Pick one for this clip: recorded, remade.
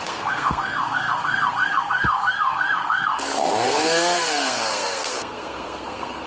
remade